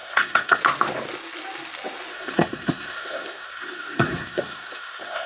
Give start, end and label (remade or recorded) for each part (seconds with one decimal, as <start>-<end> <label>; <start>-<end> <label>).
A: 0.0-0.6 remade; 0.6-2.1 recorded; 2.1-5.3 remade